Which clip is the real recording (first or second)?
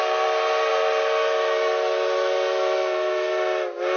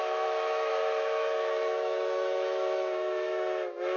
first